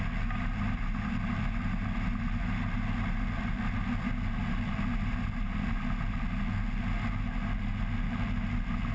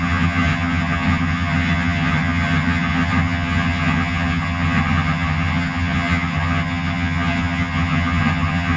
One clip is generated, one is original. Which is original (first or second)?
first